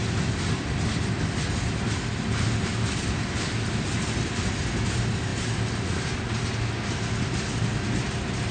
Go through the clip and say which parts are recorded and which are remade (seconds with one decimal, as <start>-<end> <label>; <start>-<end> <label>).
0.0-8.5 recorded